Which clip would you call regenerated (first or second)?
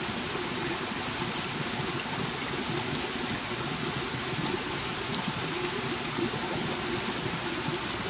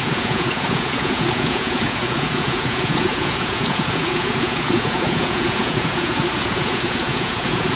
second